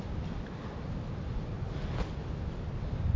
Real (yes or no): yes